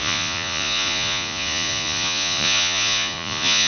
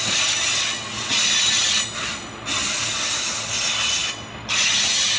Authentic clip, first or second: second